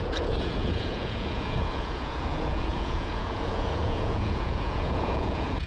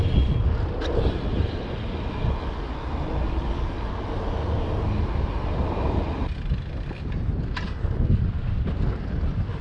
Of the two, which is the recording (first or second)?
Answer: second